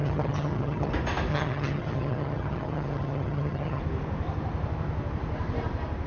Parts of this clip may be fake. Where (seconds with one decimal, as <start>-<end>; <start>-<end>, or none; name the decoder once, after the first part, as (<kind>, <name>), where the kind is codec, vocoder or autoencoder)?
0.0-0.9 (vocoder, HiFi-GAN); 1.3-3.8